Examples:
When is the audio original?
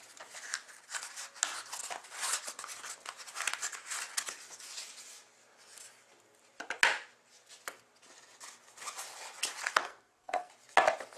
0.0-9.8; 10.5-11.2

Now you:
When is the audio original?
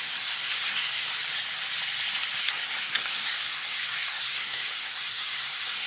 1.1-2.4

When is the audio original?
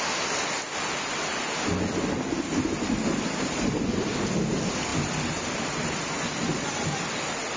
0.0-7.6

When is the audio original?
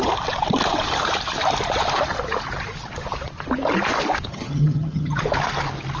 0.0-4.3; 5.2-6.0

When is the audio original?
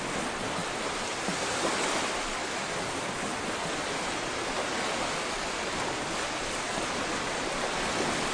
0.0-8.3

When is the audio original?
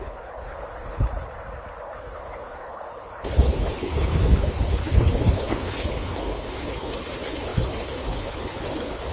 1.3-1.8